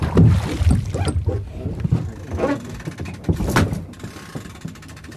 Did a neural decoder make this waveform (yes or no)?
no